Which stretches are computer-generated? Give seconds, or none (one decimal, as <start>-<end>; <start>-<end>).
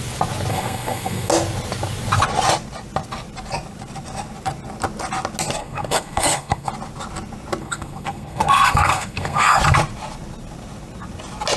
0.5-1.3; 5.6-6.7; 7.6-9.6